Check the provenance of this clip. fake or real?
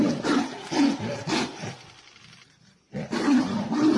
fake